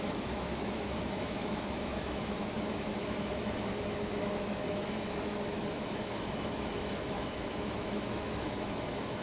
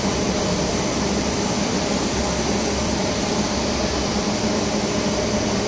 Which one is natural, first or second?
second